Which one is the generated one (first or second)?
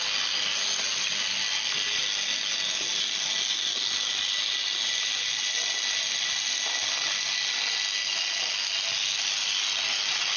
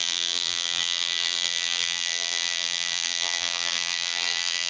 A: second